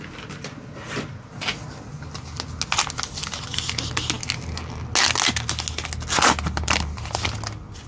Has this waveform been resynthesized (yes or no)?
no